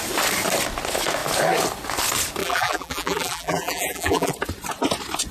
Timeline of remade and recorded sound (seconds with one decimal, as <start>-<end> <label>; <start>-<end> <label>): 0.0-2.4 recorded; 2.4-4.3 remade; 4.3-5.3 recorded